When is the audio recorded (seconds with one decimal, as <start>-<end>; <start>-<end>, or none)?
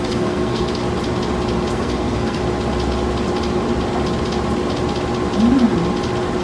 0.8-1.7; 2.4-6.4